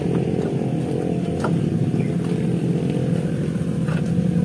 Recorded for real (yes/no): yes